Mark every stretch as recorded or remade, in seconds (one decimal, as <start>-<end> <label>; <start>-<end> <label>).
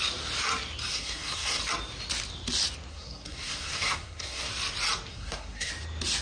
0.0-0.9 recorded; 0.9-1.6 remade; 1.6-2.9 recorded; 2.9-4.5 remade; 4.5-5.1 recorded; 5.1-5.7 remade; 5.7-6.2 recorded